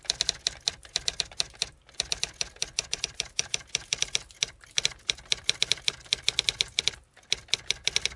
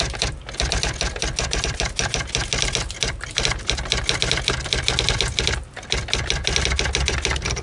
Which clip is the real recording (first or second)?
second